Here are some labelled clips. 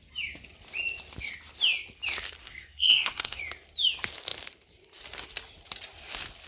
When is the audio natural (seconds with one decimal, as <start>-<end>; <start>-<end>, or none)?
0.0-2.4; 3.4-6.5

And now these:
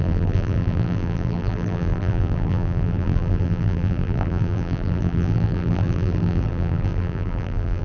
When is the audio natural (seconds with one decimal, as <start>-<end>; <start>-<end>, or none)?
none

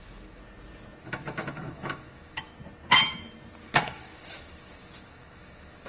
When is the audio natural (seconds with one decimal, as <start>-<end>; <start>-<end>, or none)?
0.4-1.0; 2.5-3.6

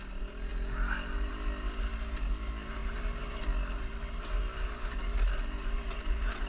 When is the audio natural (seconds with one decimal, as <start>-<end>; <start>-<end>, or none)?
0.0-6.5

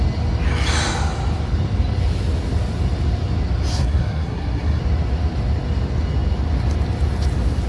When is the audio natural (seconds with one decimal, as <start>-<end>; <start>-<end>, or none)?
0.0-3.7; 4.8-7.7

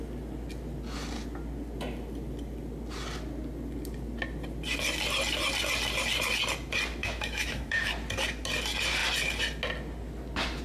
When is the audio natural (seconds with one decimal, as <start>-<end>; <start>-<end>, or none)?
0.0-7.0; 7.9-10.6

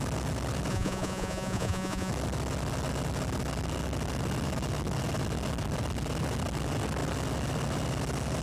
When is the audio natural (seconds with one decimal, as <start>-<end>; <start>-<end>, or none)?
0.0-0.7; 2.1-8.4

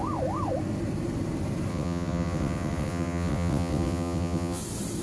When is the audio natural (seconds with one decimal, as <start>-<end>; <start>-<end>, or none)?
0.0-1.7; 4.6-5.0